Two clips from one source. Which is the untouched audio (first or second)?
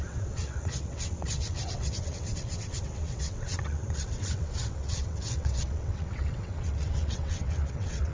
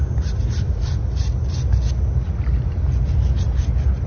second